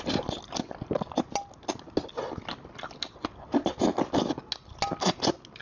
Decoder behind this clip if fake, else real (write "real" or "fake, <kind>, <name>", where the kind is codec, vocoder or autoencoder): real